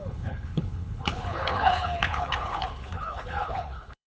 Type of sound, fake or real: fake